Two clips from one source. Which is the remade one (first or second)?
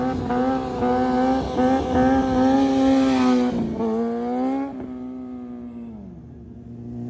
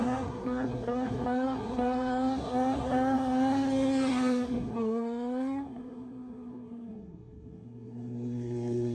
second